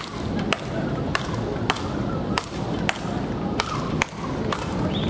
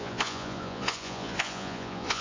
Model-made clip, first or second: second